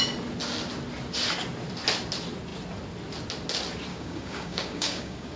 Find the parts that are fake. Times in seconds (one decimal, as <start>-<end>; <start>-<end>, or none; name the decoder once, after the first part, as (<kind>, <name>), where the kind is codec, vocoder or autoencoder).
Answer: 3.9-5.4 (codec, DAC)